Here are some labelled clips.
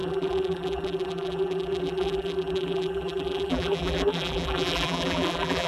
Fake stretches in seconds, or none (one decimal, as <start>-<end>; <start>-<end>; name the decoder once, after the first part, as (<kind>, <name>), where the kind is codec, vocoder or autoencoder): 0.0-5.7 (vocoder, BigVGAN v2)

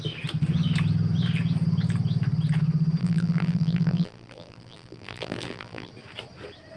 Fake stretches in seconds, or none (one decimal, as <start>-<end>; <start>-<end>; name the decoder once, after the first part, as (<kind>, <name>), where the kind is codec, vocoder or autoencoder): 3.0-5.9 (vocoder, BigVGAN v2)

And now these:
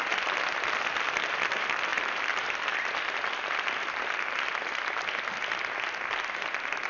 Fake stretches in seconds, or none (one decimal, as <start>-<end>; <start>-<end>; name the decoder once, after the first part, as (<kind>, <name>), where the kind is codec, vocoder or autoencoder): none

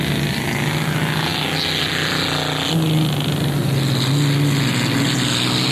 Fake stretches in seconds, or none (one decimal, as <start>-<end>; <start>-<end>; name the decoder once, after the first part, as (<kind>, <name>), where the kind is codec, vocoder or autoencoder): none